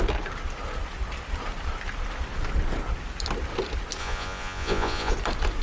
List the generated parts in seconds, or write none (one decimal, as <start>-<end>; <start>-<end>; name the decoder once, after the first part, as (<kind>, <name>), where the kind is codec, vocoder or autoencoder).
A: 4.0-5.1 (vocoder, Vocos)